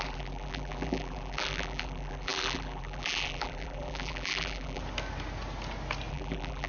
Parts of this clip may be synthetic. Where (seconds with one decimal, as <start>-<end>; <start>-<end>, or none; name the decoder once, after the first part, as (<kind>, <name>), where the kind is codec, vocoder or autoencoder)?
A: 0.0-4.8 (vocoder, BigVGAN v2); 6.1-6.7